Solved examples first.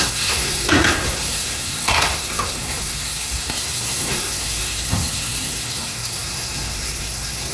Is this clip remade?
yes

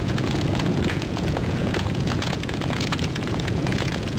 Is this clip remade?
yes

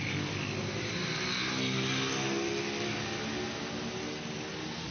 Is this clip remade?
no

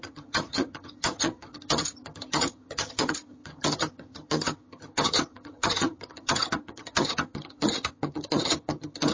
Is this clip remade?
yes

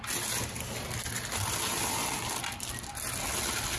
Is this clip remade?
no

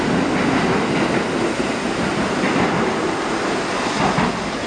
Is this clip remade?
no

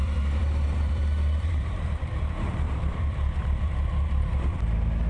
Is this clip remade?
yes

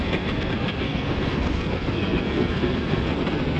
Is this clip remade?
yes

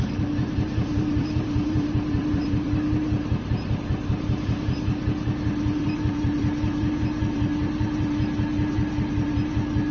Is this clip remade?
yes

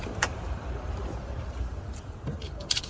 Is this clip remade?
yes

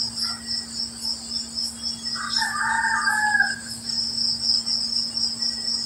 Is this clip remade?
no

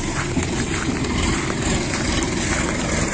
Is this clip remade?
no